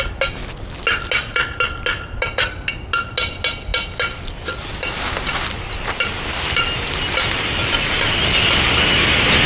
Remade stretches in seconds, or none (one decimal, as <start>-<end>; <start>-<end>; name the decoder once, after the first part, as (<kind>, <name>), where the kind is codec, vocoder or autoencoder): none